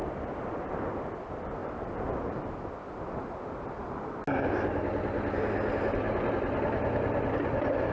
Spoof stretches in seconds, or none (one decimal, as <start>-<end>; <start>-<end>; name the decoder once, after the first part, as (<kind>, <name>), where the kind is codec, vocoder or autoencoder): none